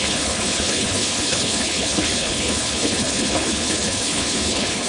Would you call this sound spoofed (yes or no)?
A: yes